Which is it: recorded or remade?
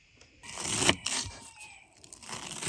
remade